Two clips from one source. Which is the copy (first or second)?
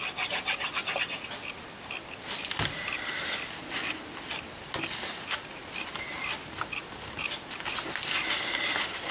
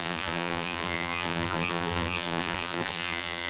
second